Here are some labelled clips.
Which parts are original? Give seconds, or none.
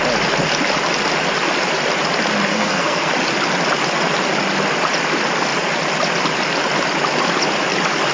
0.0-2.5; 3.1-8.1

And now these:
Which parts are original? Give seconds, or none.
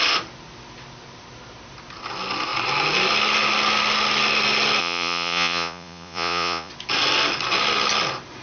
0.0-4.8; 6.7-8.4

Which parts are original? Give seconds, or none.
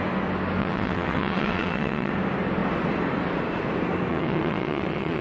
0.0-0.6; 2.1-4.1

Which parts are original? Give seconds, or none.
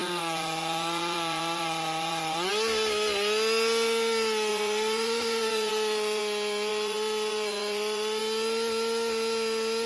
2.5-4.5; 6.2-6.7; 8.2-9.9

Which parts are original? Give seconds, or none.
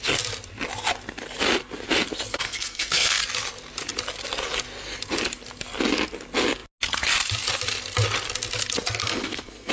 0.0-2.3; 3.2-9.0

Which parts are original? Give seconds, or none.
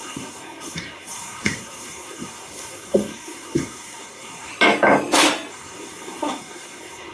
4.5-5.5